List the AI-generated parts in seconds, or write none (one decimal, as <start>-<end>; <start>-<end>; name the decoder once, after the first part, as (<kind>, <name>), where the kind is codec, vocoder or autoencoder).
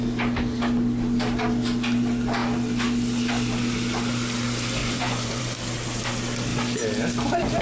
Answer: 4.8-5.4 (vocoder, Vocos)